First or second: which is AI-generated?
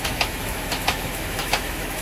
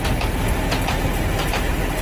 first